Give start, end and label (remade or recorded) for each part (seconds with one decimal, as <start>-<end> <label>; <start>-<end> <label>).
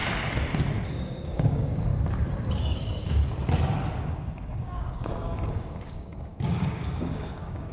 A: 0.0-0.9 recorded; 0.9-1.9 remade; 1.9-2.6 recorded; 2.6-3.2 remade; 3.2-3.9 recorded; 3.9-7.7 remade